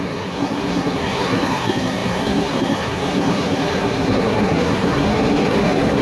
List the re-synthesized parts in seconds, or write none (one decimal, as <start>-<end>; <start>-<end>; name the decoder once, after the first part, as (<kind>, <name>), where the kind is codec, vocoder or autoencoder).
0.0-6.0 (codec, SNAC)